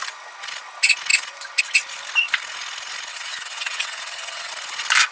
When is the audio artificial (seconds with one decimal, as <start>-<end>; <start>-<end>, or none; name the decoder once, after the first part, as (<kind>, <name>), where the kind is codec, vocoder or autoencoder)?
3.1-4.5 (vocoder, WaveNeXt)